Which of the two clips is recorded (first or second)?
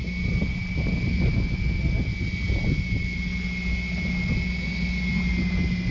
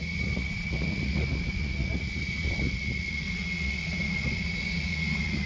first